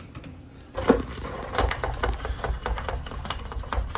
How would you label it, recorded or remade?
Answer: recorded